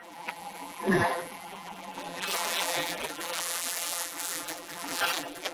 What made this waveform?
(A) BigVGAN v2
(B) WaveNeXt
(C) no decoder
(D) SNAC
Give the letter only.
A